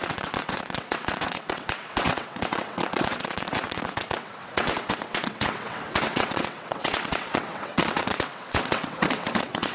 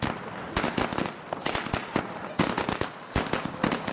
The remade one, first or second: first